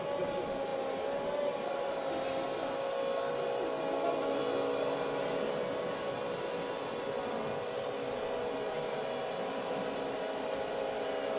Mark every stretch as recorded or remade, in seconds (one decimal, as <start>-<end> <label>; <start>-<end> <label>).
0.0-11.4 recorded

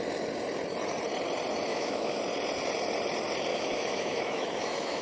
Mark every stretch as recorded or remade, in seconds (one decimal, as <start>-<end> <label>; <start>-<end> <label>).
0.0-1.7 recorded; 1.7-2.2 remade; 2.2-3.5 recorded; 3.5-5.0 remade

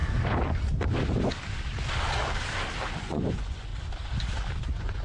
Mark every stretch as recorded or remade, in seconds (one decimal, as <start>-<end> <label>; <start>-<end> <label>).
0.0-3.0 recorded; 3.0-3.7 remade; 3.7-4.6 recorded; 4.6-5.0 remade

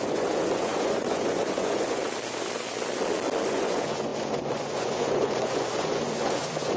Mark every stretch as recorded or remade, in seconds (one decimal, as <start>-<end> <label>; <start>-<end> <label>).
0.0-2.0 remade; 2.0-3.5 recorded; 3.5-6.8 remade

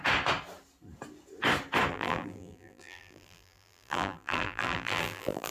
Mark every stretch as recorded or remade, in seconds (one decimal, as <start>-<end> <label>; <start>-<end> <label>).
0.0-1.9 recorded; 1.9-5.5 remade